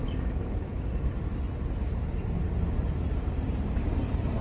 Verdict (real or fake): real